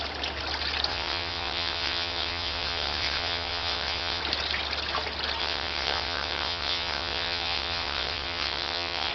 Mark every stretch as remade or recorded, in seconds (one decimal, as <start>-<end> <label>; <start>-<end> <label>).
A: 0.0-0.9 recorded; 0.9-4.2 remade; 4.2-5.4 recorded; 5.4-9.1 remade